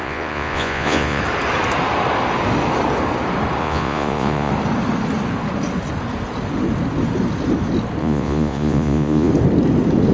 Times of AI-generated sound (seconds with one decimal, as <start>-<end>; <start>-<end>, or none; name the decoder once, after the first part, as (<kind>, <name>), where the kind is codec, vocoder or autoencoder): 0.0-1.2 (vocoder, Vocos); 3.6-4.5; 8.0-9.3